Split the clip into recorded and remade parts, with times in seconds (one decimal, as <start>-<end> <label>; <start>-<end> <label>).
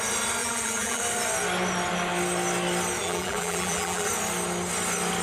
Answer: 0.0-0.4 recorded; 0.4-1.0 remade; 1.0-3.0 recorded; 3.0-4.1 remade; 4.1-5.2 recorded